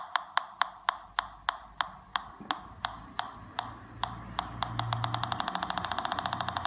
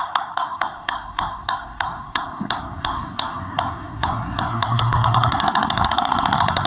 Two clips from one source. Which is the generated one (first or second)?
second